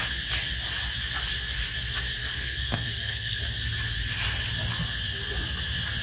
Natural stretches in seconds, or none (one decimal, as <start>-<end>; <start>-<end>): 0.0-2.2; 3.4-6.0